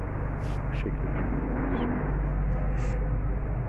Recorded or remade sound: recorded